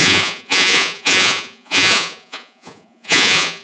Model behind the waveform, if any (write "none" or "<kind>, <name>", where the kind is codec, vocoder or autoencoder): vocoder, Vocos